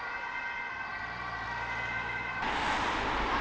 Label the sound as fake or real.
real